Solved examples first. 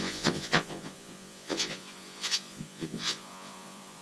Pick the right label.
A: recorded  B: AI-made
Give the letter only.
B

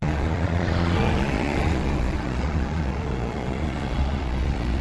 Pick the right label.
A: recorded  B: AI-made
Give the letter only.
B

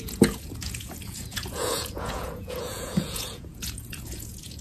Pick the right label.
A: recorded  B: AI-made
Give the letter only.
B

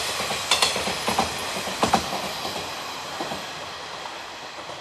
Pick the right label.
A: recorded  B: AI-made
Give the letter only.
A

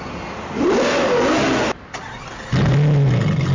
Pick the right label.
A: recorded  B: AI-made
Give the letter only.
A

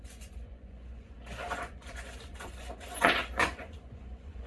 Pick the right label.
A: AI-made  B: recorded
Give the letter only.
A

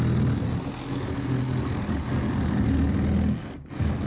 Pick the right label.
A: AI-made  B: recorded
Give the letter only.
B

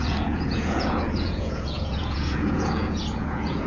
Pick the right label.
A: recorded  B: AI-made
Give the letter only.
B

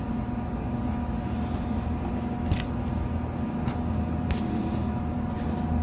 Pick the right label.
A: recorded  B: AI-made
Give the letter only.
A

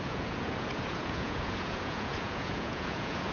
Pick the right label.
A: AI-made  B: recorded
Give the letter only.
A